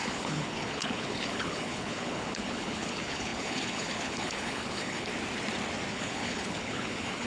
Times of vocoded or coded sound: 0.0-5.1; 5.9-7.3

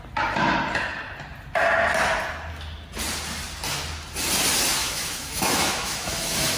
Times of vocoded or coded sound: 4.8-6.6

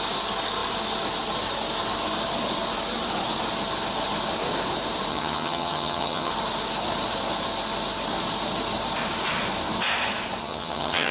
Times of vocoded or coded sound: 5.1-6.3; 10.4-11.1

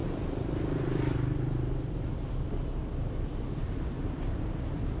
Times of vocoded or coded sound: 0.0-2.8; 3.6-5.0

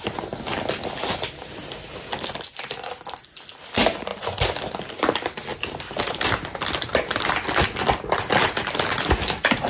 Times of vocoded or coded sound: 5.5-6.1

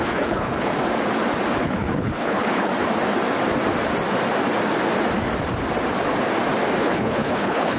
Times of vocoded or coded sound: 0.0-0.7; 1.6-2.7; 6.8-7.8

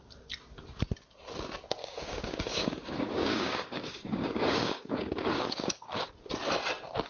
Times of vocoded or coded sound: 1.8-6.1